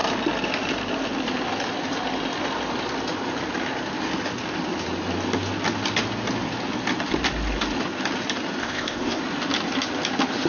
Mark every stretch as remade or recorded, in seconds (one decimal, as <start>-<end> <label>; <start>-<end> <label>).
0.0-8.6 recorded; 8.6-9.2 remade; 9.2-10.5 recorded